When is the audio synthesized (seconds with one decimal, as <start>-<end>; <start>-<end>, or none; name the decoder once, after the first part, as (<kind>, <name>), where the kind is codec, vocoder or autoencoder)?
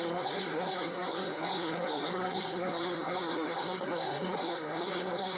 0.0-5.4 (codec, SNAC)